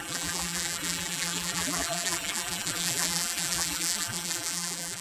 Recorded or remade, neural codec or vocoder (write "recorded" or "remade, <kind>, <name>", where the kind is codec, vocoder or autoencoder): remade, vocoder, BigVGAN v2